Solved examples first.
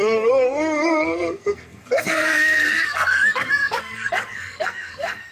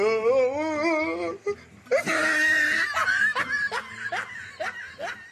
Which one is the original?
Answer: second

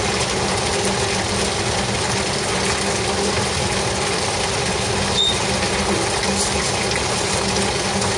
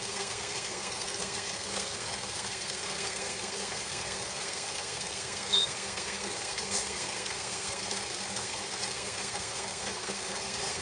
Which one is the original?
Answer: first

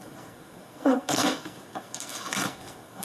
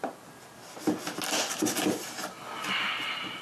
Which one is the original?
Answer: second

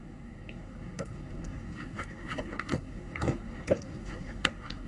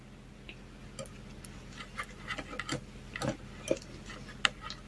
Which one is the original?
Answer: second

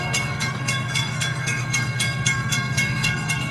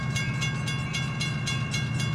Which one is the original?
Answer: second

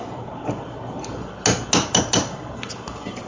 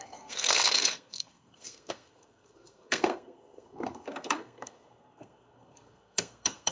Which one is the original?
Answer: first